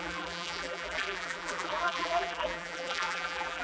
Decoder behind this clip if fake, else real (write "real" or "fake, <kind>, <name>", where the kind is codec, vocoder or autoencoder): fake, vocoder, BigVGAN v2